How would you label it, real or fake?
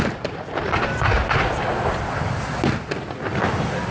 real